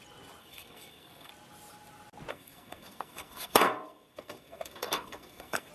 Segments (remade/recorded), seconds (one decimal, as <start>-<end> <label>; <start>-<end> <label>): 0.0-0.4 recorded; 0.4-1.3 remade; 1.3-2.3 recorded; 2.3-5.7 remade